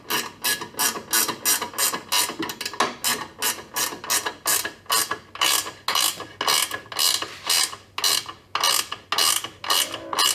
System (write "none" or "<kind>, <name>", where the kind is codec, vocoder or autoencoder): none